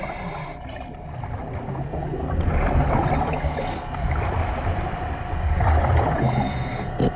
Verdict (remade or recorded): recorded